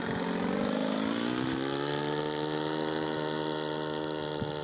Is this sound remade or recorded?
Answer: recorded